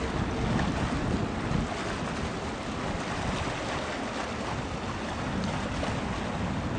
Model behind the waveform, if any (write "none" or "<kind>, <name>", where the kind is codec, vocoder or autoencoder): none